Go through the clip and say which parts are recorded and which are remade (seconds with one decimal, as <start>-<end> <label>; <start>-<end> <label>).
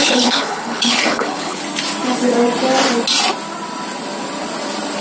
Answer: 0.0-1.6 remade; 1.6-5.0 recorded